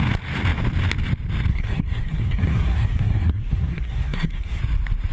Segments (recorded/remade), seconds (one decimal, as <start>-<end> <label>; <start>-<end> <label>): 0.0-1.5 recorded; 1.5-4.6 remade; 4.6-5.1 recorded